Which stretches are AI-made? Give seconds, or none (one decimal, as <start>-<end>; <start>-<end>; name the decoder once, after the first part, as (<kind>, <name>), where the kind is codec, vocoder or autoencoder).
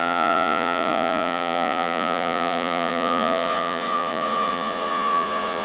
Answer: 0.0-5.6 (vocoder, Vocos)